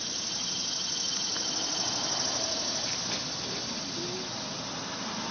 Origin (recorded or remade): recorded